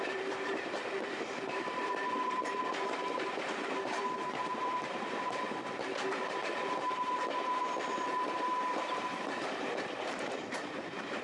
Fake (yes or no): yes